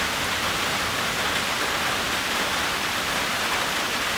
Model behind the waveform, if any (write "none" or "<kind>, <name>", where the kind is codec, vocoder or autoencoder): none